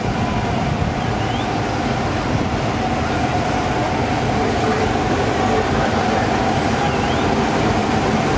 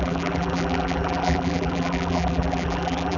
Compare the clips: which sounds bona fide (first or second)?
first